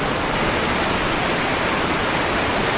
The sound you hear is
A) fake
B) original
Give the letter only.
B